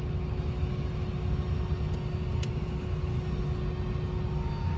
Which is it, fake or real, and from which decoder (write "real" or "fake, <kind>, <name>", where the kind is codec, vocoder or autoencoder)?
real